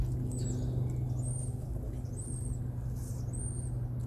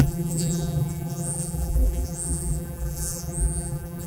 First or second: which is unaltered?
first